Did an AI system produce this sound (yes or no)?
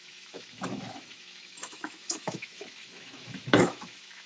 yes